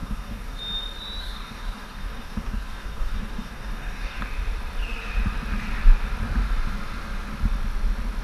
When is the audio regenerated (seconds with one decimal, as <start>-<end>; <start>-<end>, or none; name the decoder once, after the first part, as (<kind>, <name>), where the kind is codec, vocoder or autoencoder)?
0.0-0.6 (codec, DAC); 1.2-4.2